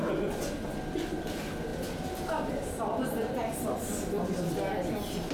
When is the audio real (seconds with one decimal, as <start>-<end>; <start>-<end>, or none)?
0.0-1.7; 4.5-5.3